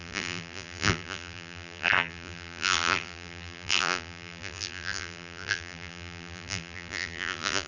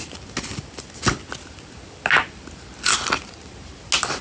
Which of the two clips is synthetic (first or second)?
first